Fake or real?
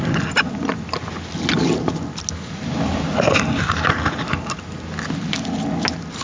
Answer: real